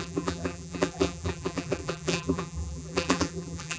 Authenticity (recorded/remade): remade